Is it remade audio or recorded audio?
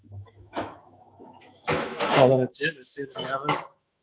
remade